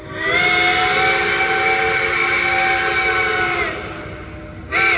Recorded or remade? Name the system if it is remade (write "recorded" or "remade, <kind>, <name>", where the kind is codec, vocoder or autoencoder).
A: recorded